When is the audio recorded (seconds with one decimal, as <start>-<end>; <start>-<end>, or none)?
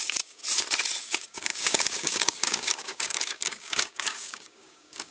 0.4-1.0